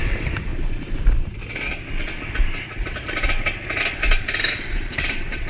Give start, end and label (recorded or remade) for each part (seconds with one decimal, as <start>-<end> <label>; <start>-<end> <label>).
0.0-0.5 remade; 0.5-3.8 recorded; 3.8-5.5 remade